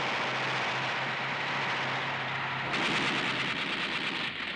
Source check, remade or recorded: recorded